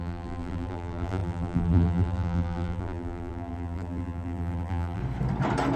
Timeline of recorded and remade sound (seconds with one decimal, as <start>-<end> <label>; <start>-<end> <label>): 0.0-5.0 remade; 5.0-5.8 recorded